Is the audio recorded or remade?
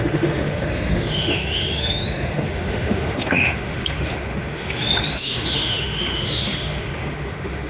remade